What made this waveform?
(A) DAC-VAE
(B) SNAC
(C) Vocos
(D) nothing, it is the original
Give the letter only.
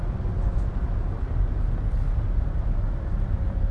D